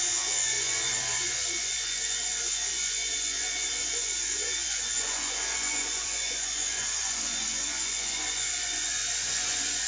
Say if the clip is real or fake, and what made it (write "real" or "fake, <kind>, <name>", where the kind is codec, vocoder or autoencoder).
fake, vocoder, Vocos